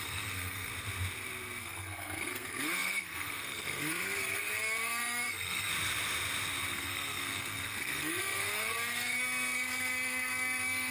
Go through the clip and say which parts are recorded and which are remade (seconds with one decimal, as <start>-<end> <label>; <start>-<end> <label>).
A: 0.0-0.7 remade; 0.7-1.6 recorded; 1.6-5.7 remade; 5.7-6.7 recorded; 6.7-10.9 remade